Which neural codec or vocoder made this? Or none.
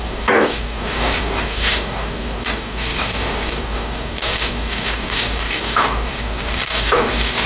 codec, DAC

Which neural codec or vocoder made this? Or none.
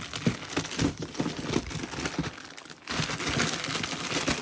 none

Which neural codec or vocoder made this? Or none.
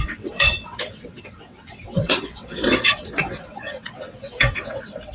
vocoder, WaveNeXt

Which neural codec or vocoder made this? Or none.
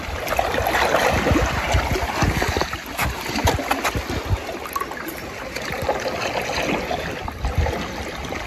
none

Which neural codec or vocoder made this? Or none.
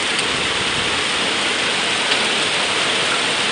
vocoder, BigVGAN v2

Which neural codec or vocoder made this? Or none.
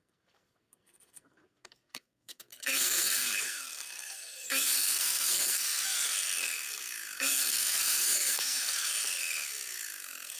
codec, SNAC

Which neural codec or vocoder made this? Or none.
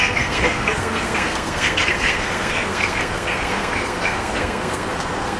codec, SNAC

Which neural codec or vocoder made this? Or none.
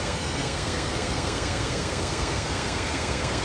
codec, SNAC